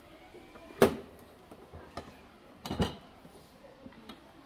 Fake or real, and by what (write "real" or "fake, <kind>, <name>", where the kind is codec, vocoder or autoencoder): real